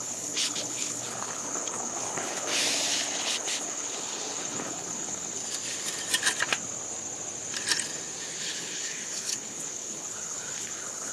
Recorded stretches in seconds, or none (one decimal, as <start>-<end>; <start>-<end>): 2.5-3.2; 5.4-8.4